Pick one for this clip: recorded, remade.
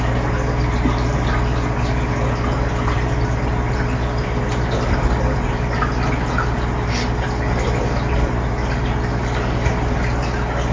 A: recorded